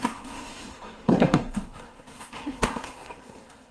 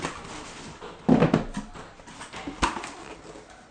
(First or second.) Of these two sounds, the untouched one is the second